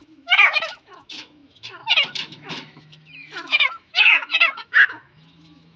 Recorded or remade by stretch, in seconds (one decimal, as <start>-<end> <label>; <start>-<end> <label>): 0.0-5.8 remade